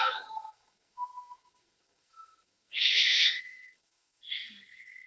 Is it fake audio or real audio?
fake